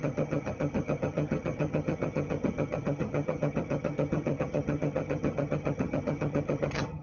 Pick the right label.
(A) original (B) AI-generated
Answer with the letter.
B